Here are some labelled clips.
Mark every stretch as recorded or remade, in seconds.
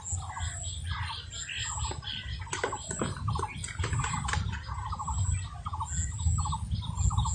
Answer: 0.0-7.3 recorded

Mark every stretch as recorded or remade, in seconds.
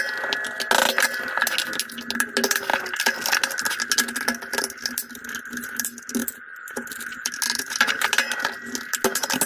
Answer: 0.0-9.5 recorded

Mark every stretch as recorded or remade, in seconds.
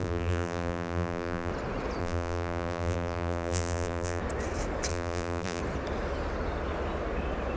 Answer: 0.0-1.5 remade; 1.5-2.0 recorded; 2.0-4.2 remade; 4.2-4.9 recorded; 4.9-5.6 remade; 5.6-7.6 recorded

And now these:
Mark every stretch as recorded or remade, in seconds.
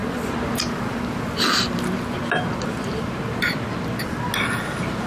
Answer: 0.0-5.1 recorded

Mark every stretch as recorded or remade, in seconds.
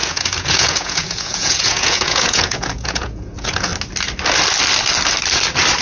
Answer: 0.0-3.7 remade; 3.7-5.8 recorded